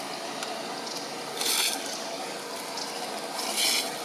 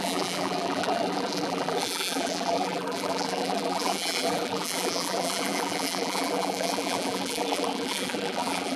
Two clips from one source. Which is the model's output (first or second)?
second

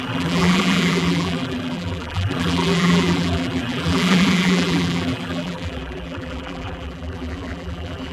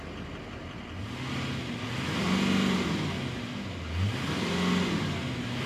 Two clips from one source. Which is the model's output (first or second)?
first